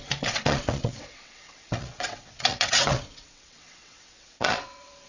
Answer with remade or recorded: remade